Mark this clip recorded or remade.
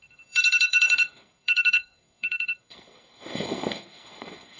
remade